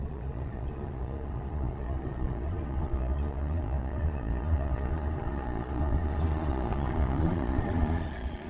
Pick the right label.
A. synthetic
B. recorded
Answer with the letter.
A